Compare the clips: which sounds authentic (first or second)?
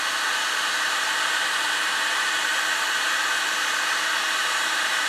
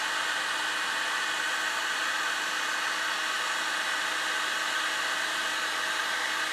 second